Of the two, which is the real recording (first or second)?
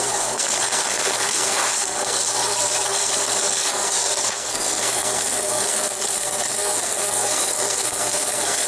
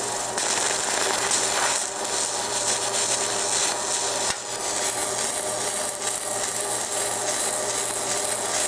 second